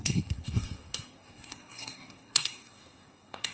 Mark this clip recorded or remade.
remade